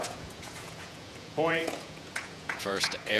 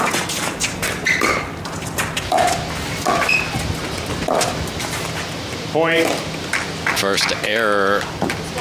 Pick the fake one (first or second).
first